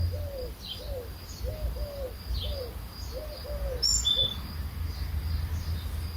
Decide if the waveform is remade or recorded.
recorded